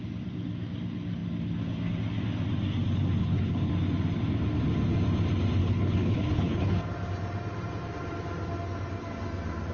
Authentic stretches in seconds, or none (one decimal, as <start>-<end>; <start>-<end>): 0.0-3.2; 3.7-5.6; 6.7-9.7